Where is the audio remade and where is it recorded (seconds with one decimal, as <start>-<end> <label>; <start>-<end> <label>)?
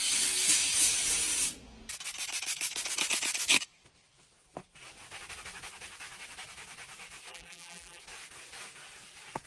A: 0.0-7.3 recorded; 7.3-8.0 remade; 8.0-9.5 recorded